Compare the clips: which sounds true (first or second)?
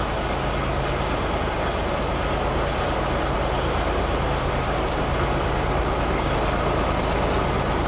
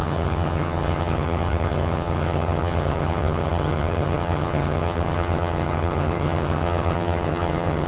first